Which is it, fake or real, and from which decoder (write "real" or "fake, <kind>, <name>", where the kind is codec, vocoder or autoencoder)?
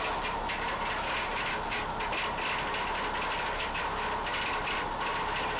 real